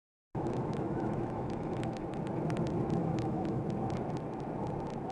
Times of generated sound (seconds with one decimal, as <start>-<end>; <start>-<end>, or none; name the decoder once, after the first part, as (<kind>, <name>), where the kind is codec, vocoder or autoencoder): 0.0-2.0 (autoencoder, DAC-VAE); 3.0-3.6